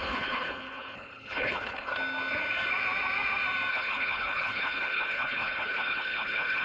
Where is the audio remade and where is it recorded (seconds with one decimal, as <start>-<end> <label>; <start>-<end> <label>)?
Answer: 0.0-1.9 remade; 1.9-3.7 recorded; 3.7-6.6 remade